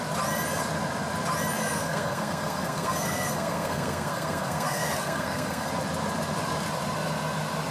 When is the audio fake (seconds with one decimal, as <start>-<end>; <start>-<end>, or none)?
1.6-5.7